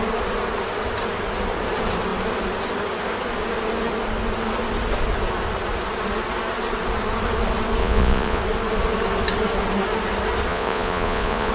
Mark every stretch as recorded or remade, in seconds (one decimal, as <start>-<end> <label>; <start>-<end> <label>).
0.0-7.8 recorded; 7.8-8.4 remade; 8.4-10.5 recorded; 10.5-11.5 remade